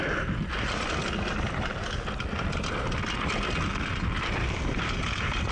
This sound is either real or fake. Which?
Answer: real